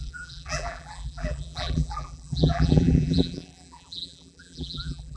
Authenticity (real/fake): fake